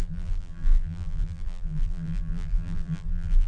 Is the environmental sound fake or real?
fake